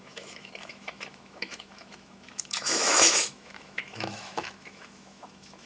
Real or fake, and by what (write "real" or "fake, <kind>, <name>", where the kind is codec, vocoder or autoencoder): fake, autoencoder, DAC-VAE